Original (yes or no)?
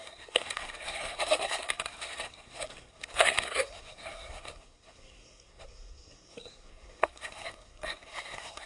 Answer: no